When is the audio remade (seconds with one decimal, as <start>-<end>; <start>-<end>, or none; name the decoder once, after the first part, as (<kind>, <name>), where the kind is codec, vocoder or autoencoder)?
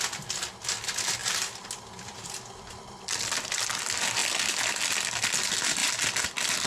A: 1.2-3.8 (vocoder, BigVGAN v2); 5.8-6.7